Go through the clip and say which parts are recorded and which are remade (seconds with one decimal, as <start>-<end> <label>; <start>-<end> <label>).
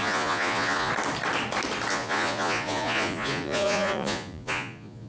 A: 0.0-0.9 remade; 0.9-1.9 recorded; 1.9-5.1 remade